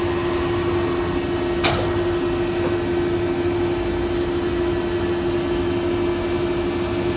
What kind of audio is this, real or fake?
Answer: real